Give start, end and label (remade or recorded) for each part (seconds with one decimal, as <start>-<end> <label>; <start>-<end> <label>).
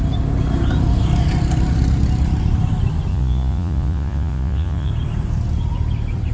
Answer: 0.0-3.1 recorded; 3.1-4.9 remade; 4.9-6.3 recorded